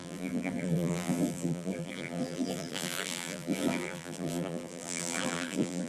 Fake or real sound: fake